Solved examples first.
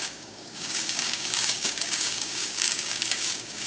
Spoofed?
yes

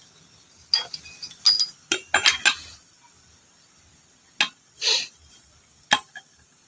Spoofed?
no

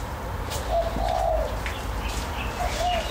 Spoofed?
no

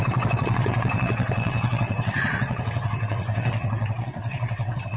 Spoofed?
yes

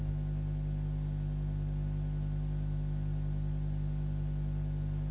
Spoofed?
no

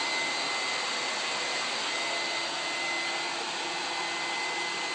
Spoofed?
no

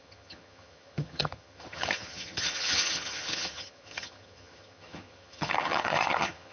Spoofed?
yes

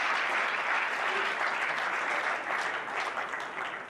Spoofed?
no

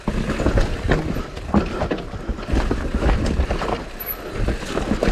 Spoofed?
no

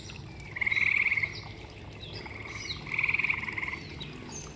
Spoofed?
no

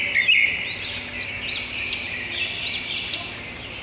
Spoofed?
no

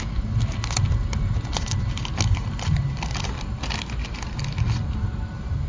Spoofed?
no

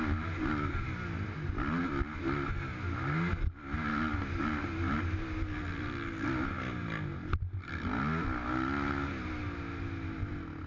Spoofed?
no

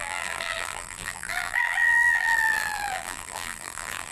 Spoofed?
yes